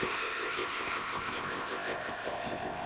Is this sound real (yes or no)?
no